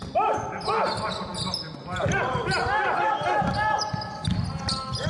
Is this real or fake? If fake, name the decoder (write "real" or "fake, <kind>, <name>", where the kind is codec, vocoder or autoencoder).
real